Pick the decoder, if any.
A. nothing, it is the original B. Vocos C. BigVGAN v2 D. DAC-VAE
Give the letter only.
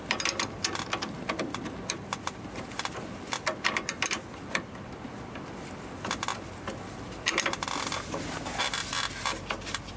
A